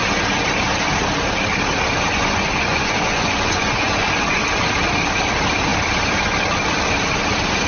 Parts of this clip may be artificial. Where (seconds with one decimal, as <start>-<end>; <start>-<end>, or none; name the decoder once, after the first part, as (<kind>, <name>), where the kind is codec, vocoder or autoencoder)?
2.1-4.4 (vocoder, Vocos)